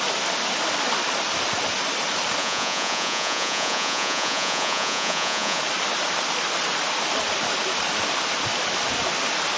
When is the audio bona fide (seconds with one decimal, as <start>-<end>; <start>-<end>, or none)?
0.0-2.4; 5.6-9.6